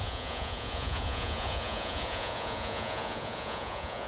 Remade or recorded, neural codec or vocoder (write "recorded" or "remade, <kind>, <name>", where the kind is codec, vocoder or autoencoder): remade, vocoder, Vocos